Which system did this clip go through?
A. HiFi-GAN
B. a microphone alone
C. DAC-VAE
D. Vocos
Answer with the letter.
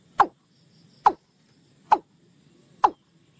B